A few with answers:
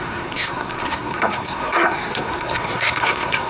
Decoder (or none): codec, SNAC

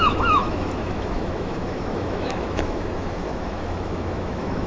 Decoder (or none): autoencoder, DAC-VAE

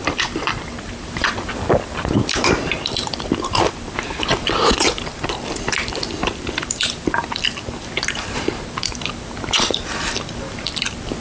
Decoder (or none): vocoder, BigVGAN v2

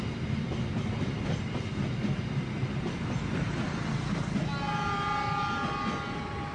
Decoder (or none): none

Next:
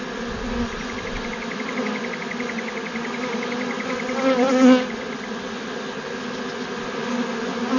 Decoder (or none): none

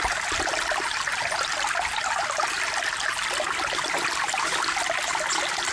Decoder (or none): none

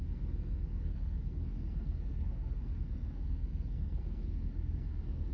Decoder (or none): codec, SNAC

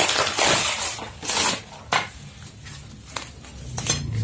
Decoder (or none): none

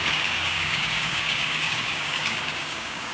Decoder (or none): codec, DAC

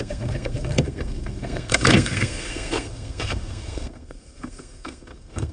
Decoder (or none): codec, SNAC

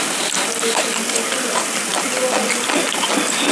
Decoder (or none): none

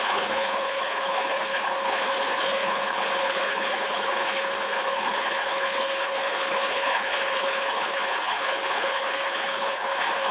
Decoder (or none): codec, HILCodec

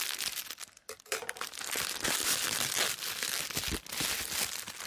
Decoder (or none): none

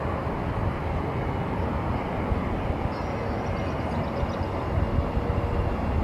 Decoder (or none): none